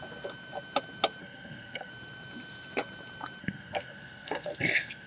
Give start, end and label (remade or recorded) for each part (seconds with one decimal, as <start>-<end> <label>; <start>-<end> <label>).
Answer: 0.0-1.2 recorded; 1.2-1.9 remade; 1.9-3.4 recorded; 3.4-5.1 remade